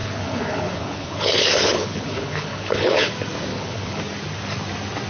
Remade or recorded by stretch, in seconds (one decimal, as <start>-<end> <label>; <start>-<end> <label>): 0.0-3.1 remade; 3.1-3.5 recorded; 3.5-4.0 remade; 4.0-5.1 recorded